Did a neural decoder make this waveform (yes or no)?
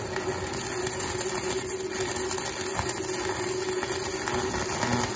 no